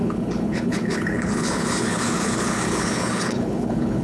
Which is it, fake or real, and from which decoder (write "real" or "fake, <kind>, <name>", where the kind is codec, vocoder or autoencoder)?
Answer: fake, codec, HILCodec